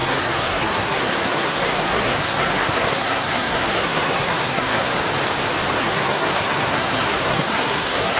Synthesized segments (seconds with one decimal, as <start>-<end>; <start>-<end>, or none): 0.0-4.9; 5.8-8.2